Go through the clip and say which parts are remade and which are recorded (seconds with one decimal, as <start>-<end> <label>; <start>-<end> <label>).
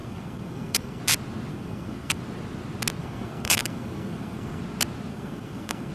0.0-1.0 remade; 1.0-1.5 recorded; 1.5-2.2 remade; 2.2-3.0 recorded; 3.0-4.6 remade; 4.6-5.1 recorded; 5.1-5.9 remade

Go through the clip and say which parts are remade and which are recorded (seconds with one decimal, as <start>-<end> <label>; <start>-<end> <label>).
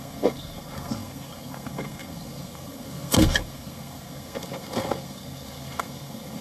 0.0-6.4 remade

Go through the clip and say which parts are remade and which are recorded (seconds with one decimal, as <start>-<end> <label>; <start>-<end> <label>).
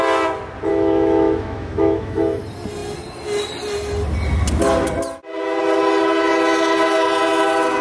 0.0-0.7 recorded; 0.7-2.4 remade; 2.4-7.8 recorded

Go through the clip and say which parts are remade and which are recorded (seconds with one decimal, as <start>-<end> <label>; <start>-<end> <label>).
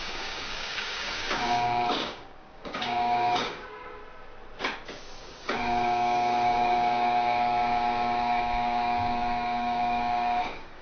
0.0-4.0 remade; 4.0-5.2 recorded; 5.2-10.8 remade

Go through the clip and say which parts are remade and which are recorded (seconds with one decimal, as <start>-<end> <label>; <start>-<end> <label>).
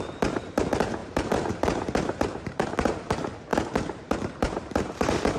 0.0-1.0 recorded; 1.0-2.9 remade; 2.9-3.5 recorded; 3.5-5.4 remade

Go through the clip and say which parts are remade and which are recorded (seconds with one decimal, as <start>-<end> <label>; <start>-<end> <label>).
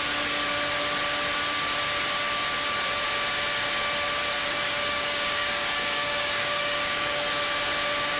0.0-4.4 recorded; 4.4-7.3 remade; 7.3-8.2 recorded